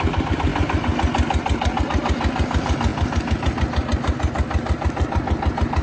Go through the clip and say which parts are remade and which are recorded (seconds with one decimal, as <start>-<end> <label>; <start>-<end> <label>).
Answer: 0.0-5.8 recorded